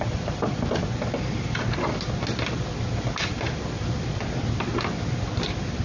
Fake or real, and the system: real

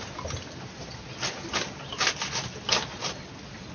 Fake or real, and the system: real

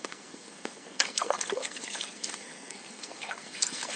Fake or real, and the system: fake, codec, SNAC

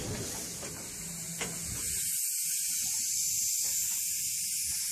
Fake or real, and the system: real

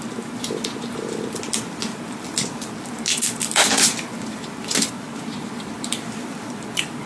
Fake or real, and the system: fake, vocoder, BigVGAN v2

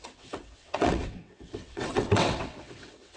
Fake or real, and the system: fake, vocoder, WaveNeXt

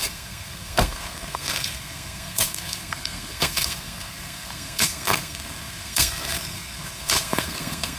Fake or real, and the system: fake, codec, SNAC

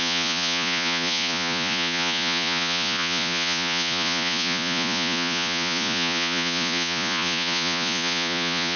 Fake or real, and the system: fake, vocoder, Vocos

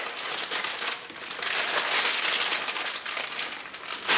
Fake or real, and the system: real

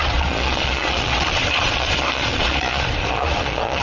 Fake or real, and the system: fake, vocoder, Vocos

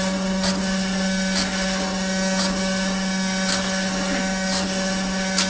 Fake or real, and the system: real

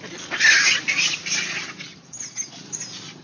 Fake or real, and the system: real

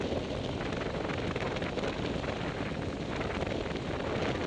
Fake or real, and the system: real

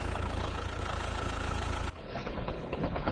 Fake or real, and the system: fake, codec, HILCodec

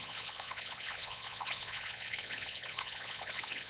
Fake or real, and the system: fake, vocoder, Vocos